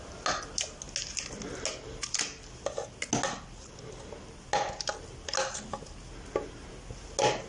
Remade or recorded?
recorded